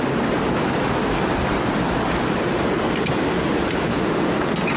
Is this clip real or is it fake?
real